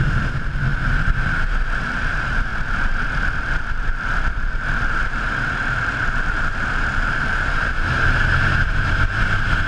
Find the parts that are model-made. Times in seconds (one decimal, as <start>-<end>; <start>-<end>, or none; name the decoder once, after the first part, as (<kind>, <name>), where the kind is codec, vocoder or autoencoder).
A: 0.0-2.5 (vocoder, BigVGAN v2); 3.7-9.7